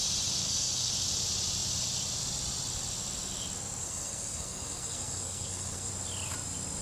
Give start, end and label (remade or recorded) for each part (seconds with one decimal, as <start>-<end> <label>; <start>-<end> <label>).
0.0-0.4 recorded; 0.4-0.9 remade; 0.9-3.8 recorded; 3.8-5.9 remade; 5.9-6.8 recorded